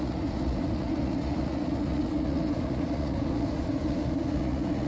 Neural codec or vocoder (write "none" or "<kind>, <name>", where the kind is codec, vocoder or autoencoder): vocoder, Vocos